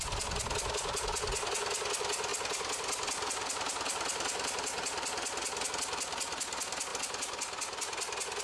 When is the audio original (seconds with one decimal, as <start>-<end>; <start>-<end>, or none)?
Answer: 0.0-8.4